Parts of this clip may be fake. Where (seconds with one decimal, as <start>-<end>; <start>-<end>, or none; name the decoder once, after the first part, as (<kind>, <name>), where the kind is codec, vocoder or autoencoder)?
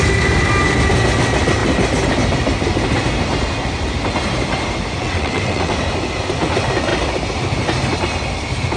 5.0-5.7 (vocoder, WaveNeXt)